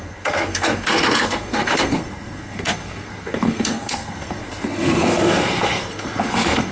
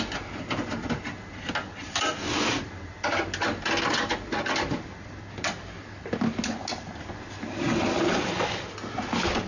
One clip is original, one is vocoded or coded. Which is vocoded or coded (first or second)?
first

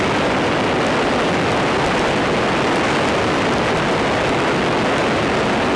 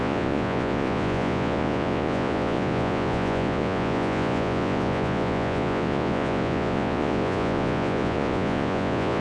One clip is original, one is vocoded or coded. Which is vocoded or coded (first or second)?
second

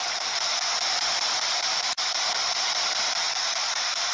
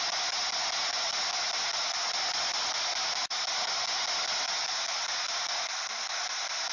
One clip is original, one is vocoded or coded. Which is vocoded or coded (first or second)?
first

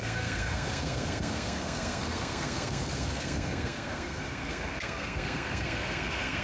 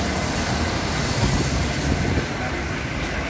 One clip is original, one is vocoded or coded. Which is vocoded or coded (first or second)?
first